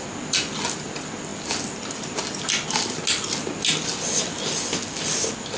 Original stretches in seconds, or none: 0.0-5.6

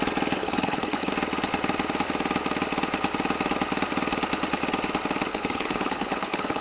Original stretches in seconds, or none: 0.0-0.4; 1.1-5.3

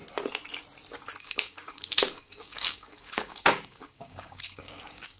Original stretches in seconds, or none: 0.0-1.2

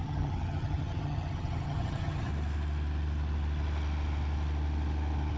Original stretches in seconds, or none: 2.3-5.4